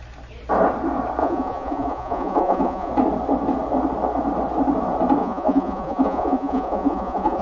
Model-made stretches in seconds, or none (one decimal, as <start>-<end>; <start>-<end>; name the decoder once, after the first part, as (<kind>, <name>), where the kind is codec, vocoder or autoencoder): 1.2-2.9 (vocoder, Vocos); 5.2-7.4